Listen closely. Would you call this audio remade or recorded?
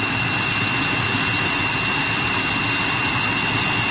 recorded